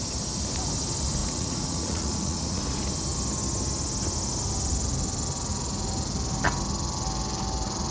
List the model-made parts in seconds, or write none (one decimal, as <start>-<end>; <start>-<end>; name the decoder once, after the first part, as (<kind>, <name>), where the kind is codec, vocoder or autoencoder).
1.2-2.6 (vocoder, Vocos)